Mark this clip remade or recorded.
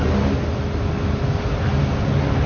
recorded